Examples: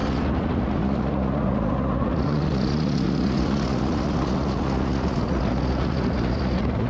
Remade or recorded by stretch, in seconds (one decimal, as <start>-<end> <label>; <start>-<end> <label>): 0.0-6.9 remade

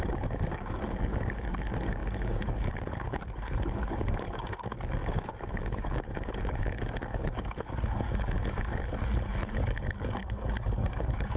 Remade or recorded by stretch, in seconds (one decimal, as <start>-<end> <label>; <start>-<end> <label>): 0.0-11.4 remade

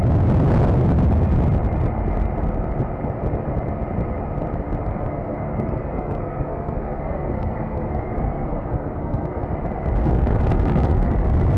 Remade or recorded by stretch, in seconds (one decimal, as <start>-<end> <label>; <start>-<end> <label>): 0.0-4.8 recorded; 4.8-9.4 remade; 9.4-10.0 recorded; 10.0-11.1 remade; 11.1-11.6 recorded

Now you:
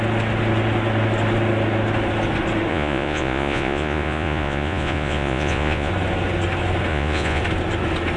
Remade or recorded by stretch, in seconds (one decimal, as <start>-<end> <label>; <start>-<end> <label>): 0.0-2.7 recorded; 2.7-5.9 remade; 5.9-6.9 recorded; 6.9-7.4 remade; 7.4-8.2 recorded